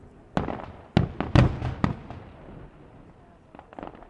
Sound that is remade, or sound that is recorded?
recorded